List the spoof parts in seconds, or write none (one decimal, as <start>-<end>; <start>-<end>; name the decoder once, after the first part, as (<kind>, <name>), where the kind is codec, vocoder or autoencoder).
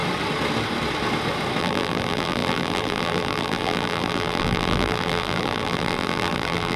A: 1.6-6.8 (vocoder, BigVGAN v2)